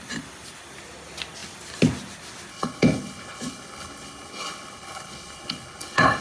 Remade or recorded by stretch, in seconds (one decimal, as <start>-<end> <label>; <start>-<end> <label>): 0.0-2.5 recorded; 2.5-6.2 remade